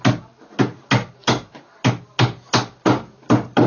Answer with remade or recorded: recorded